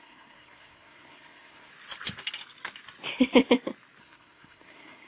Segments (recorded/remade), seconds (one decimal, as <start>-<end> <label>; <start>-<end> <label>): 0.0-1.7 remade; 1.7-4.0 recorded; 4.0-5.1 remade

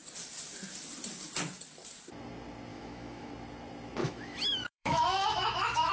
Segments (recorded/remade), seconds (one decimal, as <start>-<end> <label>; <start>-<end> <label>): 0.0-2.7 recorded; 2.7-3.3 remade; 3.3-4.0 recorded; 4.0-5.9 remade

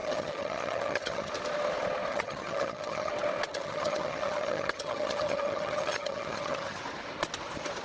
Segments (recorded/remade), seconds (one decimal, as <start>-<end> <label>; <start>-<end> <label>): 0.0-1.3 remade; 1.3-2.1 recorded; 2.1-3.1 remade; 3.1-3.5 recorded; 3.5-6.8 remade; 6.8-7.8 recorded

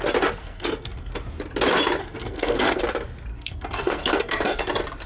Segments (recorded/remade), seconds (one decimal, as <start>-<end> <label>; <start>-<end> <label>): 0.0-0.4 recorded; 0.4-1.1 remade; 1.1-2.0 recorded; 2.0-2.8 remade; 2.8-3.3 recorded; 3.3-4.6 remade; 4.6-5.1 recorded

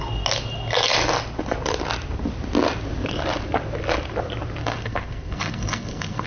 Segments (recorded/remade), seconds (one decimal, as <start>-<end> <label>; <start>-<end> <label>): 0.0-4.6 recorded; 4.6-6.3 remade

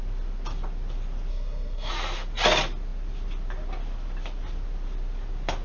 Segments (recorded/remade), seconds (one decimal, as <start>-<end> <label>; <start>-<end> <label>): 0.0-1.3 recorded; 1.3-1.9 remade; 1.9-5.6 recorded

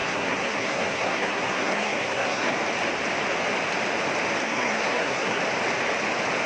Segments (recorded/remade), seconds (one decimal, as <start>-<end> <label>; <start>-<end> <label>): 0.0-2.6 remade; 2.6-4.4 recorded; 4.4-5.4 remade; 5.4-6.5 recorded

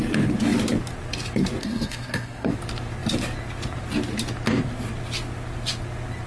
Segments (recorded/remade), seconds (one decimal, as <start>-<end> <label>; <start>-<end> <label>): 0.0-1.6 recorded; 1.6-2.5 remade; 2.5-6.3 recorded